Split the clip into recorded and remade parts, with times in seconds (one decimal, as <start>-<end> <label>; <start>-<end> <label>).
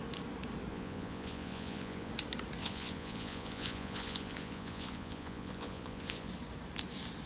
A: 0.0-0.7 recorded; 0.7-2.1 remade; 2.1-2.6 recorded; 2.6-6.3 remade; 6.3-7.3 recorded